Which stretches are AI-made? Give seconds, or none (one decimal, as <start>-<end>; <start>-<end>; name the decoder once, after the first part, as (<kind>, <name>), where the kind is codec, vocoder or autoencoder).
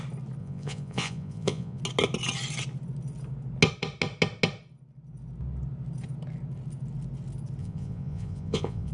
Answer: 0.4-1.8 (vocoder, Vocos); 7.6-8.9